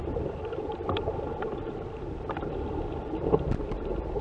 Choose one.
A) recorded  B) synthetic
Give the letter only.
B